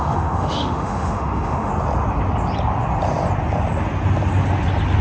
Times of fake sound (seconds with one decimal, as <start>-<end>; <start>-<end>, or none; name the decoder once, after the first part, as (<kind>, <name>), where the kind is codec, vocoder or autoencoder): 0.0-1.7 (autoencoder, DAC-VAE)